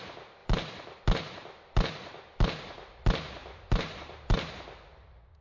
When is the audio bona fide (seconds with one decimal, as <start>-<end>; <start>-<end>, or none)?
0.0-0.4; 1.0-3.4